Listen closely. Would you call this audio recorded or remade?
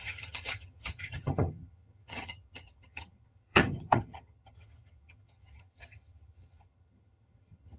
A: remade